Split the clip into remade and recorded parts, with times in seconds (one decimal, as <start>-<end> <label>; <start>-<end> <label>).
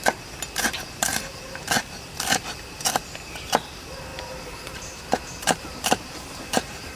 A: 0.0-1.1 recorded; 1.1-1.6 remade; 1.6-4.1 recorded; 4.1-5.0 remade; 5.0-5.4 recorded; 5.4-7.0 remade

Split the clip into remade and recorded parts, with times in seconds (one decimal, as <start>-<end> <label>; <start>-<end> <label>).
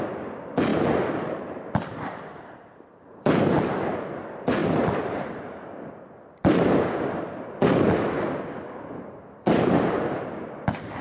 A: 0.0-0.7 recorded; 0.7-3.7 remade; 3.7-11.0 recorded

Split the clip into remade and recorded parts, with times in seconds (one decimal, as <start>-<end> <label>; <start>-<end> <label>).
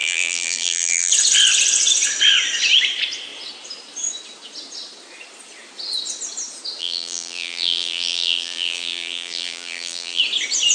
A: 0.0-1.1 remade; 1.1-6.8 recorded; 6.8-10.2 remade; 10.2-10.7 recorded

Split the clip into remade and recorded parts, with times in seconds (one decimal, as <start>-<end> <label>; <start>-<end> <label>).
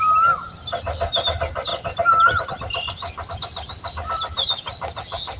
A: 0.0-5.4 recorded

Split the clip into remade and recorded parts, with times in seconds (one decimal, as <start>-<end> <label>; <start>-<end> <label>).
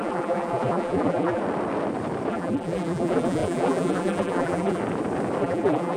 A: 0.0-1.4 remade; 1.4-2.3 recorded; 2.3-4.8 remade; 4.8-5.4 recorded; 5.4-6.0 remade